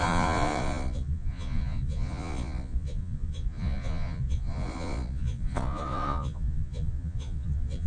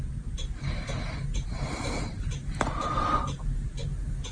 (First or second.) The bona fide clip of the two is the second